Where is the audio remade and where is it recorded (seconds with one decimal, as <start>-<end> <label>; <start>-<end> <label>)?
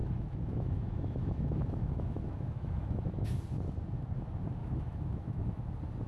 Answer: 0.0-3.4 remade; 3.4-4.6 recorded; 4.6-5.6 remade; 5.6-6.1 recorded